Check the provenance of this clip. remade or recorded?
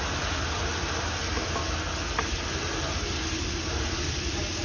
recorded